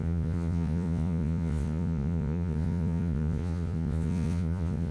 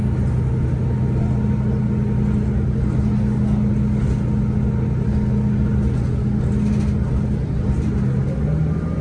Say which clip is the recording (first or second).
second